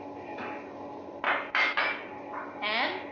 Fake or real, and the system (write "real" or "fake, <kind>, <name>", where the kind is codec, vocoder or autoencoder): real